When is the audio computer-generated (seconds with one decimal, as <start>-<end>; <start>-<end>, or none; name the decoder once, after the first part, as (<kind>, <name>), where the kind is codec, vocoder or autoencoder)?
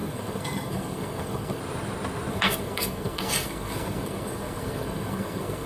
0.0-1.6 (codec, SNAC); 2.3-5.7